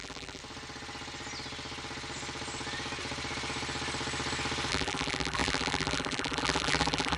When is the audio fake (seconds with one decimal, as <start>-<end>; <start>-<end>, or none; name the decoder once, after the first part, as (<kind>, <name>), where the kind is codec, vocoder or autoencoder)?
0.0-0.4 (vocoder, BigVGAN v2); 4.7-7.2